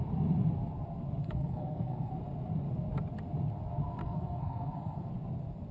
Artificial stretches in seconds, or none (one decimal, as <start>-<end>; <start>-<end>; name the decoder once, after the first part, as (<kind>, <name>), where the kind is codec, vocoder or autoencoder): 1.2-2.1 (codec, SNAC); 4.0-5.1